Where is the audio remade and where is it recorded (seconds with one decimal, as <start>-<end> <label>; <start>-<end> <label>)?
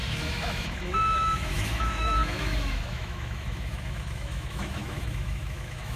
0.0-6.0 remade